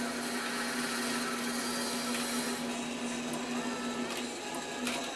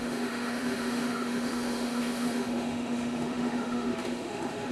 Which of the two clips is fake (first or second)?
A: second